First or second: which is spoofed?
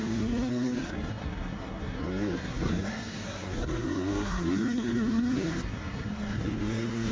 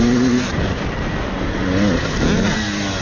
first